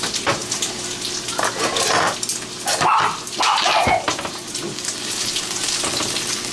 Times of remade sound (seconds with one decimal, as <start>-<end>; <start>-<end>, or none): none